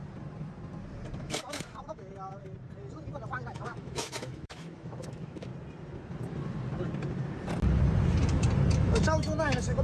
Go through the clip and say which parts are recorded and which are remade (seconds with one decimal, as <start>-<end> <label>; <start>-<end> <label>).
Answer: 0.0-1.2 recorded; 1.2-2.1 remade; 2.1-3.5 recorded; 3.5-5.5 remade; 5.5-8.7 recorded; 8.7-9.8 remade